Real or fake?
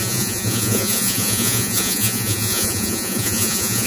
fake